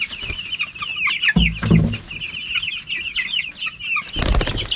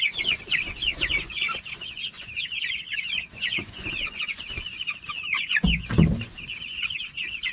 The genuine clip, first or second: first